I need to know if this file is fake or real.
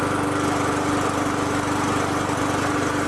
real